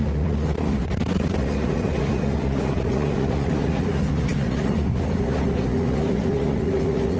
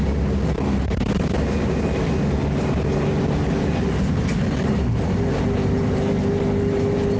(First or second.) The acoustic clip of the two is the second